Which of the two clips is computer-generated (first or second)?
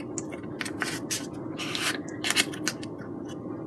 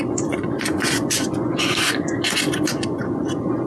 second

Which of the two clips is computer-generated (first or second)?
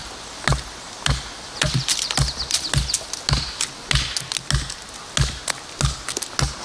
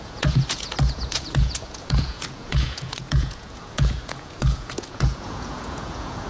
second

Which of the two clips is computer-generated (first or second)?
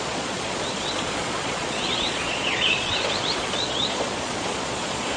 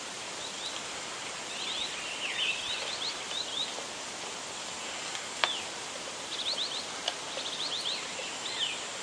first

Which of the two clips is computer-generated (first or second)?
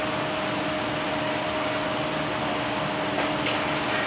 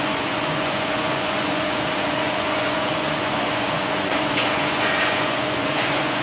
second